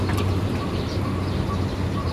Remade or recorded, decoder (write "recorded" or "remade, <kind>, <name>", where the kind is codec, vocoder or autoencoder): recorded